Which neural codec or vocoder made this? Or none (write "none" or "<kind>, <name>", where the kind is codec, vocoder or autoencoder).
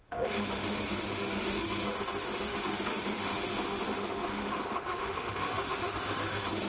autoencoder, DAC-VAE